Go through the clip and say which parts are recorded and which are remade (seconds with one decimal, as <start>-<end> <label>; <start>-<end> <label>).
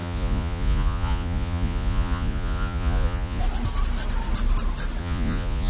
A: 0.0-3.4 remade; 3.4-5.0 recorded; 5.0-5.7 remade